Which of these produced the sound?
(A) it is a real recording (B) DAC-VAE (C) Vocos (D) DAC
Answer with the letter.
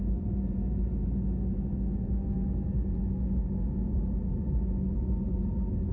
A